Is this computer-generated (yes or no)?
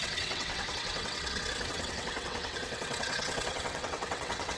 yes